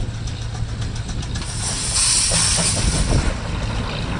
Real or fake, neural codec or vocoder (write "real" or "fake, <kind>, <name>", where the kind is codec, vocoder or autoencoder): real